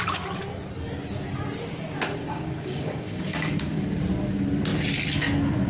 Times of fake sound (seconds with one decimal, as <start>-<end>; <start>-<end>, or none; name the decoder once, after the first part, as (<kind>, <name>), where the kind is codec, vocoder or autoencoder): 2.2-3.6 (codec, DAC)